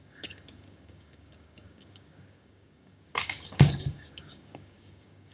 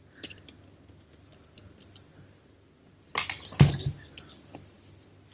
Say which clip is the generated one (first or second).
first